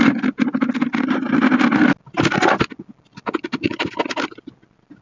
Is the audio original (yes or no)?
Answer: yes